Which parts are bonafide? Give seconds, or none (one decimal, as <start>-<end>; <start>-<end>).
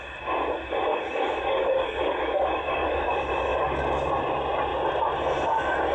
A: 0.0-0.9; 3.1-5.9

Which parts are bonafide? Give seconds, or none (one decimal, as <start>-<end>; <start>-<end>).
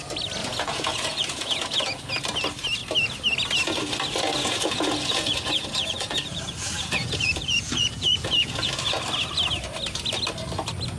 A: 0.0-0.4; 2.1-4.4; 8.7-11.0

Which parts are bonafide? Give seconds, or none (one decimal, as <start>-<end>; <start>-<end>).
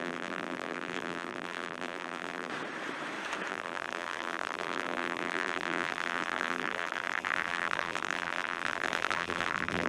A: 2.5-3.5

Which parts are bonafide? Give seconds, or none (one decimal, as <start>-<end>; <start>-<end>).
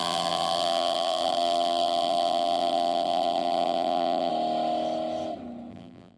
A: 4.3-5.7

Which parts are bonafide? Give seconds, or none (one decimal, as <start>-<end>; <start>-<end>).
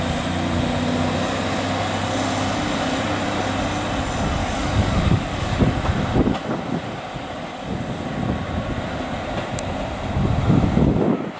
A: 0.0-4.4; 5.6-11.4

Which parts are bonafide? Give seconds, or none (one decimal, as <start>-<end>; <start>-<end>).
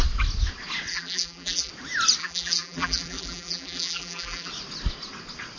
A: 0.0-0.9; 1.7-2.2; 4.5-5.6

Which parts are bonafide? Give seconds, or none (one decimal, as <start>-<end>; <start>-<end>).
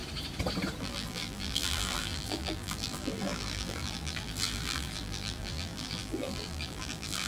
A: 0.0-0.8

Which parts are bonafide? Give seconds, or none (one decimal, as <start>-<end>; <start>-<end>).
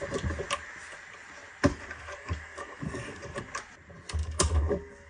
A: 0.0-1.7; 3.4-4.2